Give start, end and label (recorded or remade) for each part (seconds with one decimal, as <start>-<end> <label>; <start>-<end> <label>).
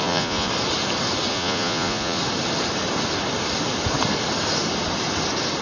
0.0-0.5 remade; 0.5-1.3 recorded; 1.3-2.2 remade; 2.2-5.6 recorded